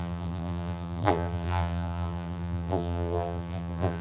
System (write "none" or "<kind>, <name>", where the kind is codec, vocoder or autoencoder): vocoder, BigVGAN v2